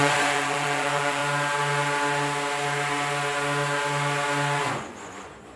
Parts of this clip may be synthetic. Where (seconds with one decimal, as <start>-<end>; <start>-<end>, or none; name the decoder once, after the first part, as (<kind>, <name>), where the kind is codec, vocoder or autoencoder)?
0.0-1.2 (vocoder, Vocos); 4.6-5.6